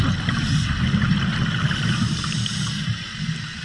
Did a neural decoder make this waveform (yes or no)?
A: no